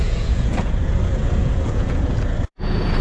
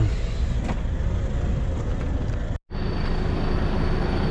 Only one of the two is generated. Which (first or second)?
first